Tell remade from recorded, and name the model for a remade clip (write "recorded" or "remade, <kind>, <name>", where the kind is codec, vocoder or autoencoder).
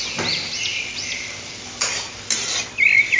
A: recorded